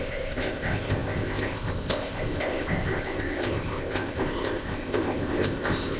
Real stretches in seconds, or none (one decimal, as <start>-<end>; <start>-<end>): none